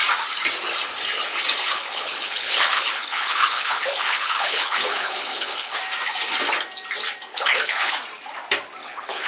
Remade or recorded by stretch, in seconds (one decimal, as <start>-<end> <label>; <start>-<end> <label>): 0.0-1.7 recorded; 1.7-5.8 remade; 5.8-7.3 recorded; 7.3-7.9 remade; 7.9-8.8 recorded; 8.8-9.3 remade